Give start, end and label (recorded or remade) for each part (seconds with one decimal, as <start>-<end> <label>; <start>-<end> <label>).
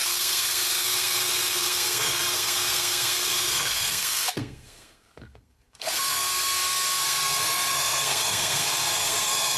0.0-9.6 remade